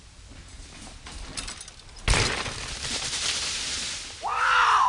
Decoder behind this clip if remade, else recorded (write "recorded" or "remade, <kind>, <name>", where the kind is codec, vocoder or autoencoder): recorded